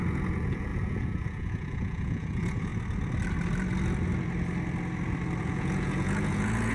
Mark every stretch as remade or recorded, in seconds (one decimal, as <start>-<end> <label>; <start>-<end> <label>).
0.0-2.7 remade; 2.7-5.4 recorded; 5.4-6.7 remade